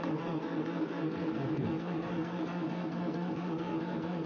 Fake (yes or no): yes